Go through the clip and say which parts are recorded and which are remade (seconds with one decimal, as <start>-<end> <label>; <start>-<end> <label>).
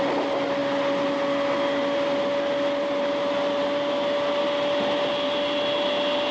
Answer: 0.0-6.3 recorded